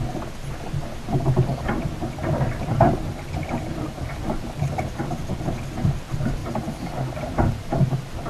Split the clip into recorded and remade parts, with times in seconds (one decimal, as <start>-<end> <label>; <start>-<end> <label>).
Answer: 0.0-1.5 recorded; 1.5-5.0 remade; 5.0-6.4 recorded; 6.4-7.7 remade; 7.7-8.3 recorded